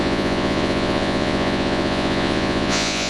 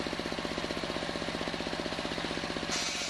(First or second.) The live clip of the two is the second